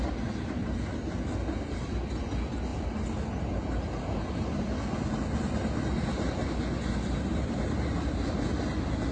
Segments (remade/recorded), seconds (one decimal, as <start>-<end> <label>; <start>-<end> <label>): 0.0-9.1 recorded